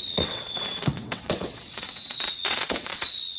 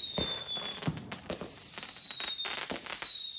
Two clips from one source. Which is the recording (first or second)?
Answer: second